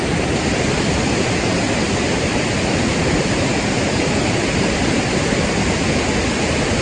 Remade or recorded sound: recorded